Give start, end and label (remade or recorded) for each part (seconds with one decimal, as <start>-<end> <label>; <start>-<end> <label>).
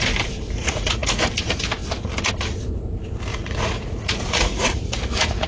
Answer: 0.0-0.6 recorded; 0.6-1.3 remade; 1.3-3.3 recorded; 3.3-5.5 remade